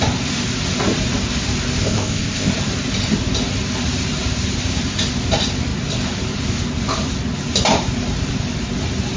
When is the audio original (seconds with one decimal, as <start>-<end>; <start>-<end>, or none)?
0.0-1.8; 2.5-9.2